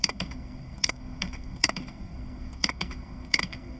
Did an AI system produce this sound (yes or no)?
yes